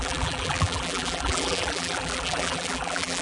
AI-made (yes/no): yes